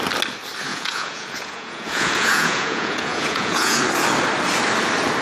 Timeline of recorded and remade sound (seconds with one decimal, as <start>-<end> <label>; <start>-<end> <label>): 0.0-0.7 recorded; 0.7-3.8 remade; 3.8-5.2 recorded